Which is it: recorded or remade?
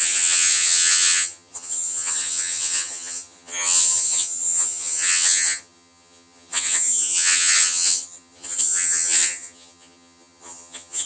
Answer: remade